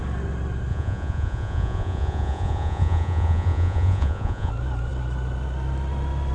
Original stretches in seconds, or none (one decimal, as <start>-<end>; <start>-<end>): 0.0-0.7; 4.5-6.3